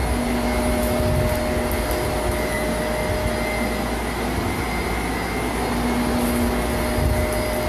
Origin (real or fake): real